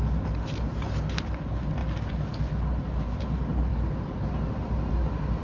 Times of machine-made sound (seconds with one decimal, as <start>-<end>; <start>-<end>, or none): none